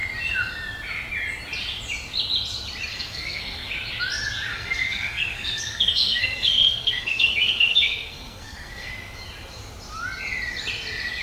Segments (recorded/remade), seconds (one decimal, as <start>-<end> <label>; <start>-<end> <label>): 0.0-2.9 recorded; 2.9-3.7 remade; 3.7-4.5 recorded; 4.5-8.9 remade; 8.9-11.2 recorded